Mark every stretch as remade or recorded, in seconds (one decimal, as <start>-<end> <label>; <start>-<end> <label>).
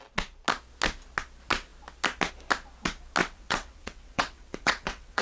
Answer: 0.0-3.2 recorded; 3.2-5.2 remade